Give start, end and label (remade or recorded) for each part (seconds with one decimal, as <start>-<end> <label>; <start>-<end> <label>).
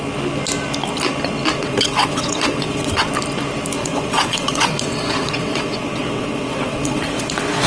0.0-1.6 recorded; 1.6-3.1 remade; 3.1-3.8 recorded; 3.8-7.7 remade